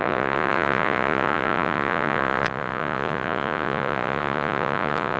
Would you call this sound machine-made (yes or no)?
yes